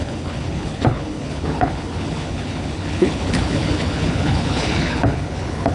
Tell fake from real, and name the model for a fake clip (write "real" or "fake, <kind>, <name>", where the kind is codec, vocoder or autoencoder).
fake, codec, HILCodec